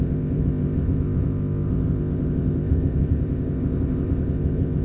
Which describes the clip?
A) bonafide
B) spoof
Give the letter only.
B